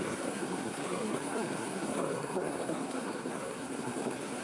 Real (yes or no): no